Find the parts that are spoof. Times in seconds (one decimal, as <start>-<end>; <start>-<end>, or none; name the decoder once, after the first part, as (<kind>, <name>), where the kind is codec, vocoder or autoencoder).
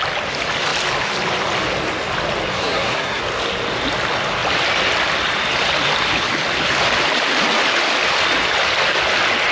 2.5-3.2 (codec, SNAC)